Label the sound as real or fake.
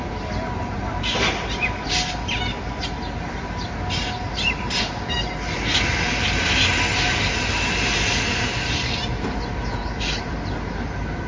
real